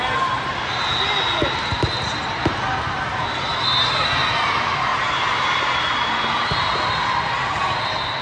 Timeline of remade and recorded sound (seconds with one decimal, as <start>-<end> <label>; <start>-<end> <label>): 0.0-8.2 recorded